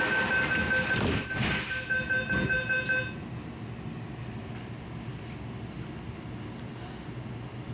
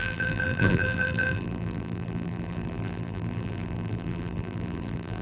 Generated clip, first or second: second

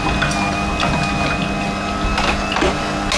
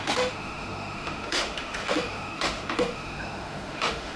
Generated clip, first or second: second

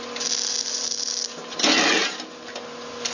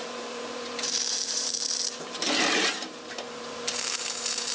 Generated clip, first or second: second